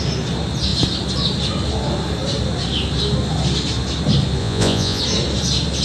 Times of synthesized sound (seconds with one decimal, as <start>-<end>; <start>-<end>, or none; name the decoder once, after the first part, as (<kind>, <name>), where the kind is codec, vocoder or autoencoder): 4.4-5.0 (vocoder, Vocos)